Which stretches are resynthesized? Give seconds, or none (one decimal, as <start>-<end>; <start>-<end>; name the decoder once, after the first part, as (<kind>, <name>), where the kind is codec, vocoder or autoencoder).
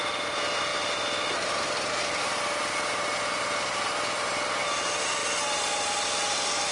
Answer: none